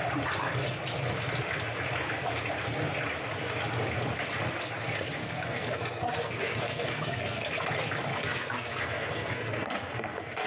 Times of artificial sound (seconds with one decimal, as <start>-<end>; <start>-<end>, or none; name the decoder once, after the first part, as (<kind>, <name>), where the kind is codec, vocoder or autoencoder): 5.2-7.5 (codec, SNAC); 8.1-10.5